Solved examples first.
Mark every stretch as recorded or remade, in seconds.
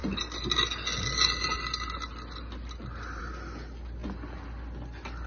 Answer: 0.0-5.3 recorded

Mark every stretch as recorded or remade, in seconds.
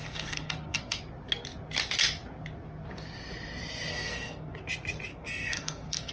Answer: 0.0-1.0 remade; 1.0-3.9 recorded; 3.9-4.6 remade; 4.6-5.1 recorded; 5.1-6.1 remade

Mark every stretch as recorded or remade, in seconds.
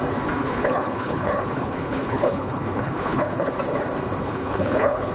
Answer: 0.0-0.4 recorded; 0.4-3.5 remade; 3.5-4.2 recorded; 4.2-5.1 remade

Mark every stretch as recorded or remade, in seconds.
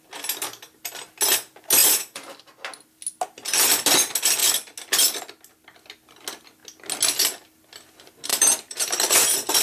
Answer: 0.0-1.8 recorded; 1.8-2.4 remade; 2.4-8.3 recorded; 8.3-9.6 remade